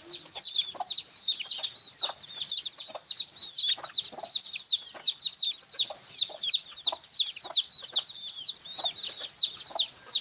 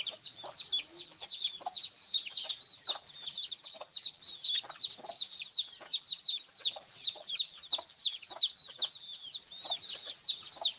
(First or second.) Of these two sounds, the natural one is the first